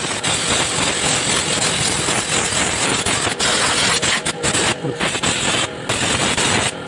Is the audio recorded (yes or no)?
yes